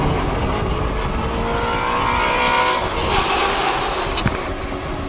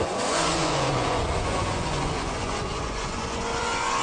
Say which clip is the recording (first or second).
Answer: first